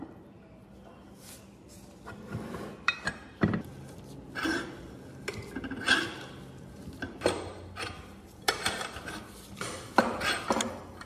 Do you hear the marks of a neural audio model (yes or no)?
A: no